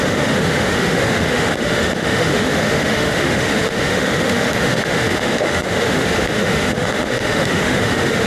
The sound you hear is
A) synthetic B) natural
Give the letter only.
A